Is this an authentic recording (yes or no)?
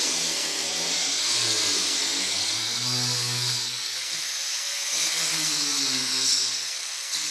no